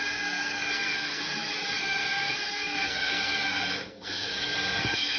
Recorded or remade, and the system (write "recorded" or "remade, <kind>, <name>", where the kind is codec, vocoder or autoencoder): remade, codec, SNAC